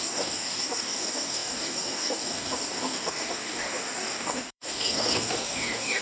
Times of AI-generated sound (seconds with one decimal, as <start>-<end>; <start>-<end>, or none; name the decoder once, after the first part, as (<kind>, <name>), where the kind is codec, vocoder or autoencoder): 0.0-6.0 (codec, DAC)

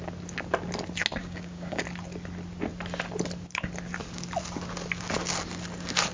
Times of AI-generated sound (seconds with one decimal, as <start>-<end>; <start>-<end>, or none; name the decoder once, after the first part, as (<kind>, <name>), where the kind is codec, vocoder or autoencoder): 1.2-1.8 (codec, DAC)

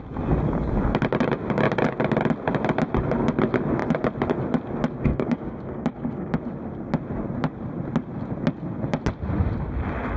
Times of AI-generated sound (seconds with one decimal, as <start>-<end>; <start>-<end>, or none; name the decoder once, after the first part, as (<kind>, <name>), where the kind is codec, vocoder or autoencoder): 5.1-6.4 (codec, DAC)

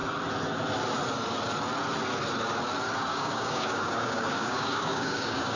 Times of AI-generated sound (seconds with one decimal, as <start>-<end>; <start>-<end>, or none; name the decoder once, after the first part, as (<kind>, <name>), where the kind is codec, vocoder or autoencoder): 3.1-5.6 (codec, DAC)

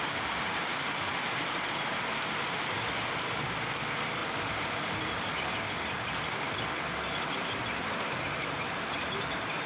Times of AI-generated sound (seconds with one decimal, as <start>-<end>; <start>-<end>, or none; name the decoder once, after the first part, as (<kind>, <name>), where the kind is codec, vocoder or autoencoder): none

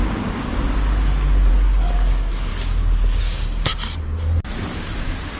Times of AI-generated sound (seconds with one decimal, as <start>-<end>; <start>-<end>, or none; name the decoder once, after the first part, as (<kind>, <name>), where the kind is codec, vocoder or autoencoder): 1.5-2.5 (codec, DAC); 3.2-3.7

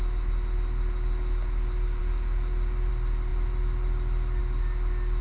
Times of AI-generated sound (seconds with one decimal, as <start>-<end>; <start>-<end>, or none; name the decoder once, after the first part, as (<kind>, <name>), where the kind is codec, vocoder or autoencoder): none